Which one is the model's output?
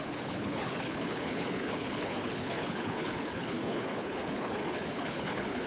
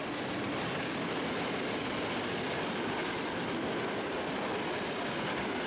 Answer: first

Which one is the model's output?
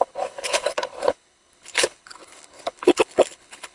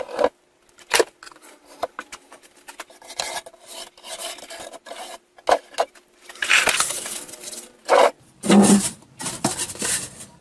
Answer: first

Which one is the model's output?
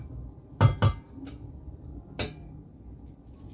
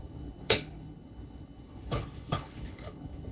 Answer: second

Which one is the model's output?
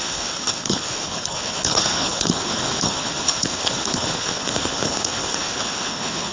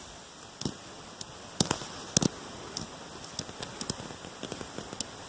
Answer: first